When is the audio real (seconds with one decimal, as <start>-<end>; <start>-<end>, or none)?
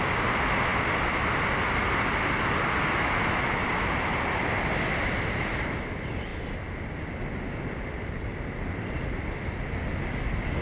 0.0-10.6